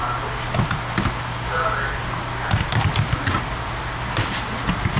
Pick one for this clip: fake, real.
real